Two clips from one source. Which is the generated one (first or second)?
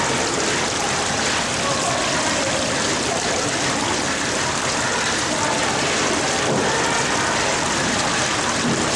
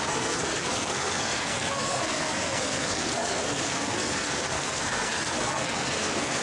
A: second